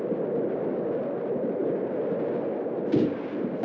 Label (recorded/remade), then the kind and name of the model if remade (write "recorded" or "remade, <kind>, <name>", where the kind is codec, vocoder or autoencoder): recorded